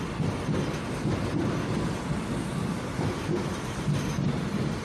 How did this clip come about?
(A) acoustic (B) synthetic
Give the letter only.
A